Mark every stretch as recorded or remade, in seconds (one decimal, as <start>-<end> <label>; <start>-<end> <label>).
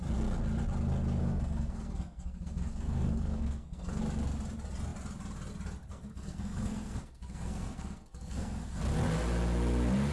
0.0-1.2 recorded; 1.2-4.0 remade; 4.0-5.9 recorded; 5.9-8.8 remade; 8.8-10.1 recorded